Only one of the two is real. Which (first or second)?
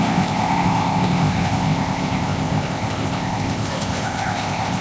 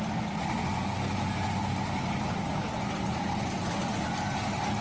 second